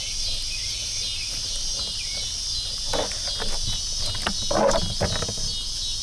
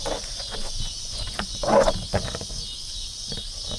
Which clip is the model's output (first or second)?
second